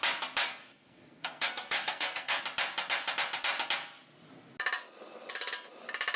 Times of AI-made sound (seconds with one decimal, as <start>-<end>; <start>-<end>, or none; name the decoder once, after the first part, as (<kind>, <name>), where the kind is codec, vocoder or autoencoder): 0.5-2.4 (codec, SNAC)